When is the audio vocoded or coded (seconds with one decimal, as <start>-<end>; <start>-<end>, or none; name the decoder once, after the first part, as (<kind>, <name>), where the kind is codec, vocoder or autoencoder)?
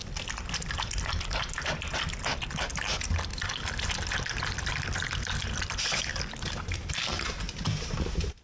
3.3-8.4 (vocoder, BigVGAN v2)